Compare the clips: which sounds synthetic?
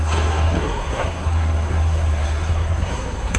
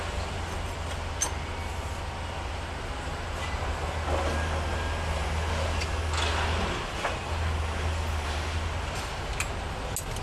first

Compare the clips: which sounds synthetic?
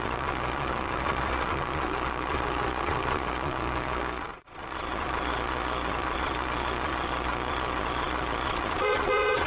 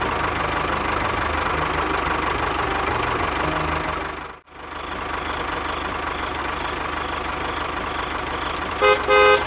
first